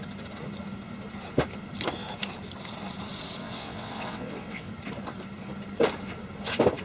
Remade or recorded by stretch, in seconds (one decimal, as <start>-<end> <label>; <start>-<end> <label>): 0.0-3.4 recorded; 3.4-4.7 remade; 4.7-6.8 recorded